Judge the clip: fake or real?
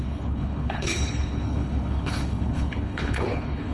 fake